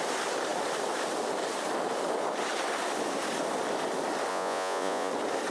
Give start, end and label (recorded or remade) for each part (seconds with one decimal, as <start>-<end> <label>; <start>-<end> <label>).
0.0-4.3 recorded; 4.3-5.1 remade; 5.1-5.5 recorded